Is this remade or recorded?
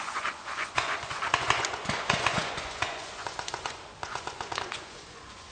remade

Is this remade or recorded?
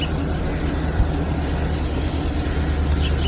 recorded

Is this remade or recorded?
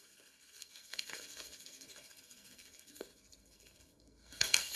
remade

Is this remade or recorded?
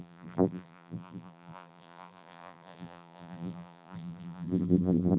remade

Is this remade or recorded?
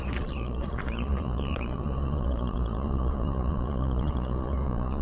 remade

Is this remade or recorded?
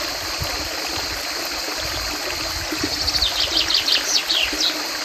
recorded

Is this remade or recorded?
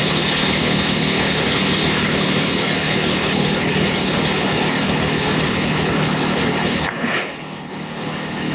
remade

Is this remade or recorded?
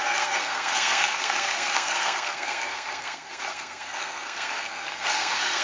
remade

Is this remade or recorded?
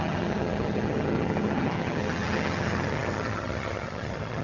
remade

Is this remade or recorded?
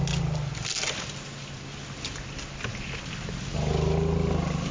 recorded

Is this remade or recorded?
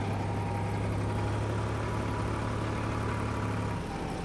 recorded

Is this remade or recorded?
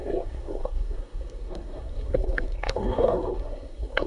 remade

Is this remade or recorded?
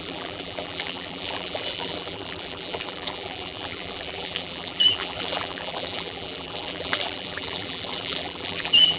remade